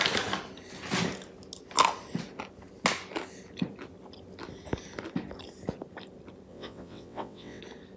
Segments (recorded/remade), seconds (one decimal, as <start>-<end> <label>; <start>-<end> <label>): 0.0-6.5 recorded; 6.5-7.6 remade; 7.6-8.0 recorded